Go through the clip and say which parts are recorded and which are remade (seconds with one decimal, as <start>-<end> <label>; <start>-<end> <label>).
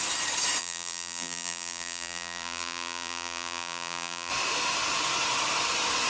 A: 0.0-0.6 recorded; 0.6-4.3 remade; 4.3-6.1 recorded